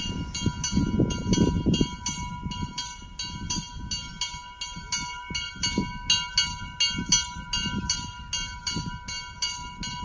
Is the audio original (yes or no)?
yes